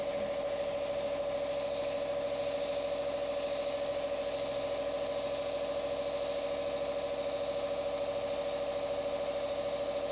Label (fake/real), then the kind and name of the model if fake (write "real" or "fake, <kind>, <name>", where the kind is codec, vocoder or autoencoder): real